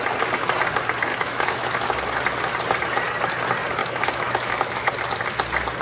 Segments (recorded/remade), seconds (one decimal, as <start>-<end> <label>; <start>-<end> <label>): 0.0-1.1 recorded; 1.1-1.8 remade; 1.8-3.8 recorded; 3.8-4.9 remade; 4.9-5.8 recorded